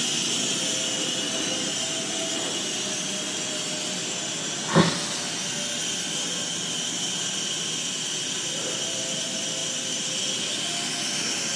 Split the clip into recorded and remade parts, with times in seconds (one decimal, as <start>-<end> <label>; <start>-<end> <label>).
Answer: 0.0-11.6 recorded